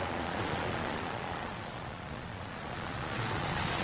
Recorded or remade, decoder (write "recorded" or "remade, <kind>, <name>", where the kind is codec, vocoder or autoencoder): remade, vocoder, Vocos